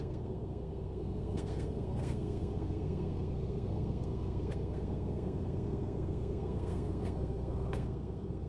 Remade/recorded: remade